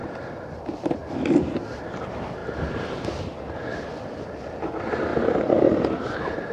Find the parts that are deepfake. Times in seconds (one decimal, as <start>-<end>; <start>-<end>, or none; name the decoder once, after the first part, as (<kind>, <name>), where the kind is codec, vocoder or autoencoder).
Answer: 0.0-0.6 (vocoder, BigVGAN v2); 2.4-3.4; 5.1-5.8